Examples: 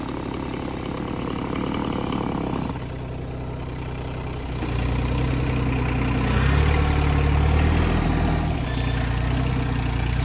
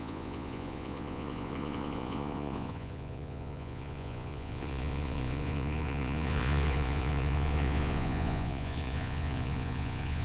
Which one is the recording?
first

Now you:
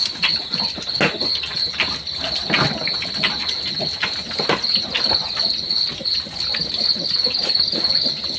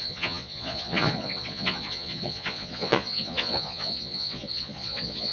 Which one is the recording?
first